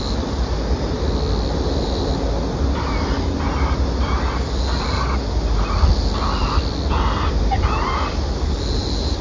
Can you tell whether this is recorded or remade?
recorded